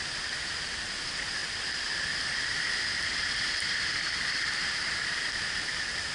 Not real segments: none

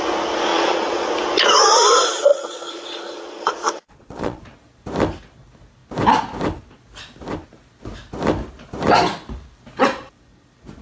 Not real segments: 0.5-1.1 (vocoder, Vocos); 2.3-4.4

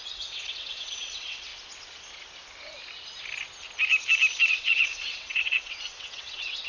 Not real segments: 0.0-1.5 (vocoder, WaveNeXt); 4.5-6.7

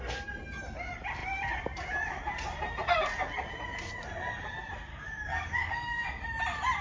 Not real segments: 4.9-6.2 (codec, DAC)